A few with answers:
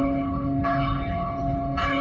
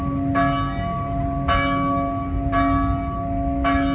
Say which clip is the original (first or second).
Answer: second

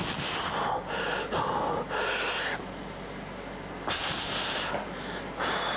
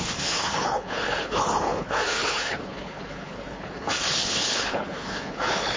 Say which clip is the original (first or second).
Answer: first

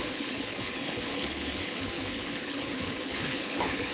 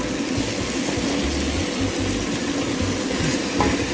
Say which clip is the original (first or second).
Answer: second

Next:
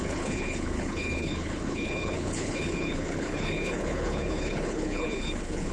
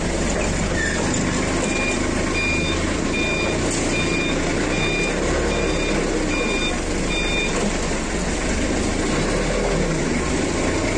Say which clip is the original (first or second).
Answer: second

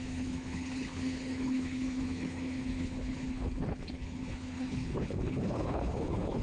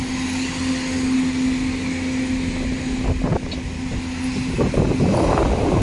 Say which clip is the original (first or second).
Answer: second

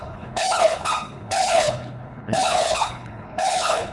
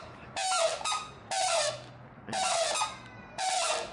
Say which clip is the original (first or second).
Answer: second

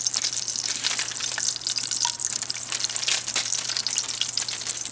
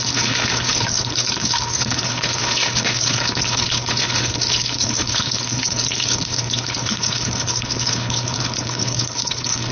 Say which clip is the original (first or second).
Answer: first